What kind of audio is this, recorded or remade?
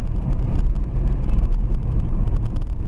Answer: remade